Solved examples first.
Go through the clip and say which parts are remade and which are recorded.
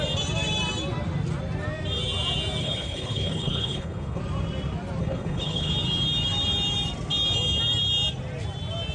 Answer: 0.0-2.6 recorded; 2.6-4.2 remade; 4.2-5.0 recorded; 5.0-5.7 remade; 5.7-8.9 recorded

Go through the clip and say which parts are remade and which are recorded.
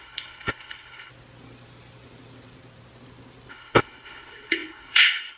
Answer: 0.0-1.1 remade; 1.1-3.5 recorded; 3.5-5.4 remade